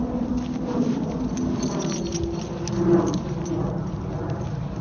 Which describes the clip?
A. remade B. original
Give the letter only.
B